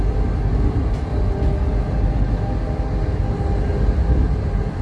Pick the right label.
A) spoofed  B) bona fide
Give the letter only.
B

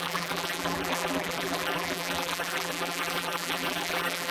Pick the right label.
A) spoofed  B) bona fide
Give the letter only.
A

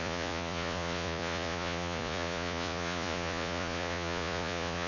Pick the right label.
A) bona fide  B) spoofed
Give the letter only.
B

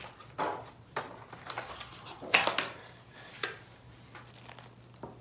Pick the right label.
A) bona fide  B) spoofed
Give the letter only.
A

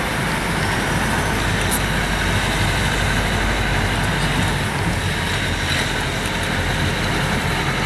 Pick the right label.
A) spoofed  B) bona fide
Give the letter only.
B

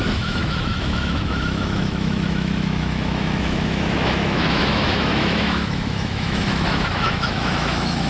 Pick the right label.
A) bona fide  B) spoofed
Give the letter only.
B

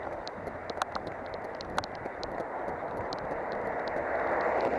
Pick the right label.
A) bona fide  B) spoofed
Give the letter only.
A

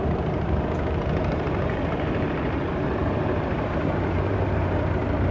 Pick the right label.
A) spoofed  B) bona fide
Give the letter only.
A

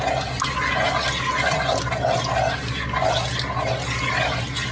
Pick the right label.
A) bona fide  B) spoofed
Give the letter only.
A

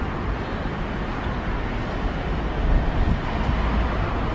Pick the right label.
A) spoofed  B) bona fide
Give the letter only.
B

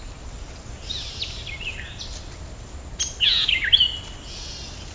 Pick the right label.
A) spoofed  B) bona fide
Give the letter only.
B